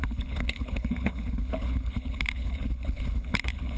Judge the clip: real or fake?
fake